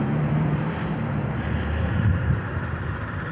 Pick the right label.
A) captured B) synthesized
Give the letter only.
B